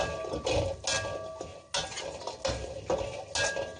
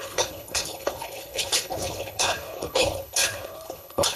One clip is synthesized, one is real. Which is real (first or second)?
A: first